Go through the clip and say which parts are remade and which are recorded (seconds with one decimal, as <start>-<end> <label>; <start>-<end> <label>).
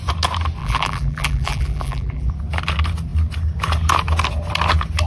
0.0-0.6 recorded; 0.6-2.3 remade; 2.3-5.1 recorded